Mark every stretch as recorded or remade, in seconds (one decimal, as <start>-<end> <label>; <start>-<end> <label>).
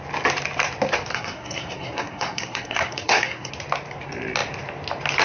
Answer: 0.0-1.1 recorded; 1.1-3.5 remade; 3.5-5.2 recorded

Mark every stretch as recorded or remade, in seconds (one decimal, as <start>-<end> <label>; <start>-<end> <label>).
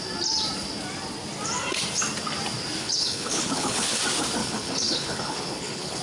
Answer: 0.0-2.8 recorded; 2.8-4.0 remade; 4.0-4.4 recorded; 4.4-6.0 remade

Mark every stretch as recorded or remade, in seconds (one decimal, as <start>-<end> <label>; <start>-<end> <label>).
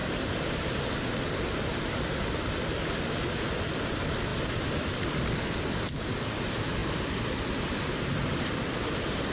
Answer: 0.0-9.3 recorded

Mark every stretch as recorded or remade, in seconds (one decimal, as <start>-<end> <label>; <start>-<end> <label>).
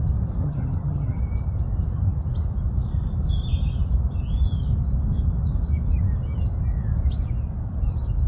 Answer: 0.0-0.4 recorded; 0.4-1.2 remade; 1.2-8.3 recorded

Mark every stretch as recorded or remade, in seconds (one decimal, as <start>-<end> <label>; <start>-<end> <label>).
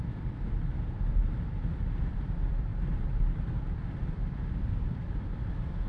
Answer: 0.0-1.2 remade; 1.2-2.1 recorded; 2.1-5.9 remade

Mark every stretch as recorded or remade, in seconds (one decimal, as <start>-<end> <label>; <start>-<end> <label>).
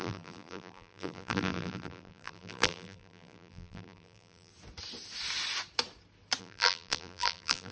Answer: 0.0-4.5 remade; 4.5-6.4 recorded; 6.4-7.7 remade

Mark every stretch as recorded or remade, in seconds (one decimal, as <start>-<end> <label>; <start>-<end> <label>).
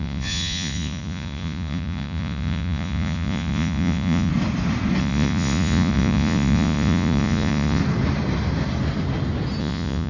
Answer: 0.0-4.3 remade; 4.3-5.0 recorded; 5.0-7.8 remade; 7.8-9.6 recorded; 9.6-10.1 remade